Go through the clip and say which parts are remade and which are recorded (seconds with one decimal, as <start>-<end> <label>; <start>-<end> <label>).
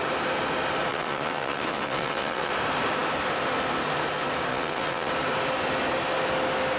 0.0-0.9 recorded; 0.9-2.5 remade; 2.5-4.5 recorded; 4.5-5.1 remade; 5.1-6.8 recorded